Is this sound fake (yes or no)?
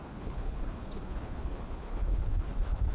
yes